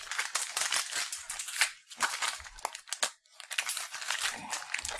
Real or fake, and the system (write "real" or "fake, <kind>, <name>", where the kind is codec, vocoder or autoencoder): real